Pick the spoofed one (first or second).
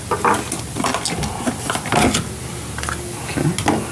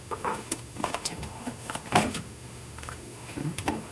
second